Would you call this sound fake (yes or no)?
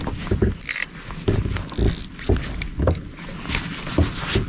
no